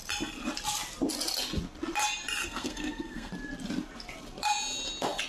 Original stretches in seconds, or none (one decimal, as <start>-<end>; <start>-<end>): 0.0-2.4; 3.3-5.3